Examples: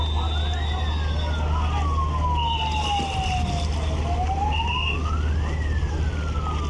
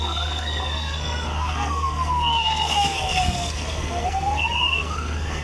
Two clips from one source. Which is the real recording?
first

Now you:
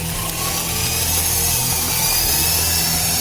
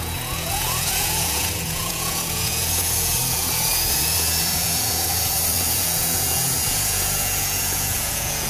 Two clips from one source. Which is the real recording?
first